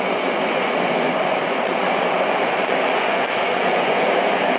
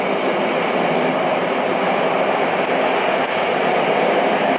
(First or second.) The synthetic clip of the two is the first